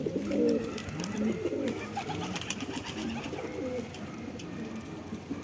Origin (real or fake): real